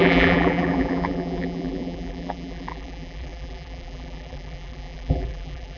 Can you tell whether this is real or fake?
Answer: fake